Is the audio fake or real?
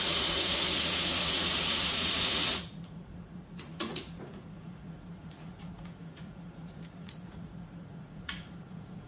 fake